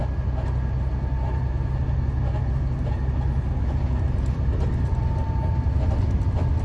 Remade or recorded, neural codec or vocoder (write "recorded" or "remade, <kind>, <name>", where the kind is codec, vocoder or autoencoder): recorded